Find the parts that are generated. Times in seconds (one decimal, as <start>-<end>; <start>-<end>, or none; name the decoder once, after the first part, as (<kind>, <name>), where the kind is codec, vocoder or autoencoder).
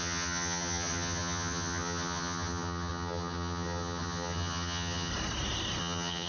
0.0-5.1 (vocoder, HiFi-GAN); 5.8-6.3